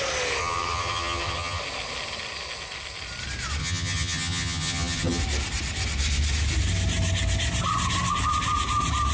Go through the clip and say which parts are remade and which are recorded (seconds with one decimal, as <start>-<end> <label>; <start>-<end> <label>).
0.0-0.4 recorded; 0.4-1.6 remade; 1.6-3.6 recorded; 3.6-5.2 remade; 5.2-9.1 recorded